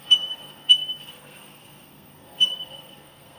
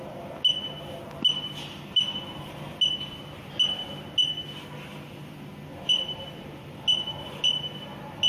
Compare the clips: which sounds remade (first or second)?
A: first